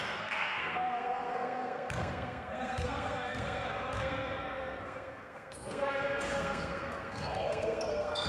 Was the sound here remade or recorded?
remade